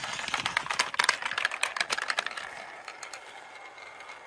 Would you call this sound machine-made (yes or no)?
no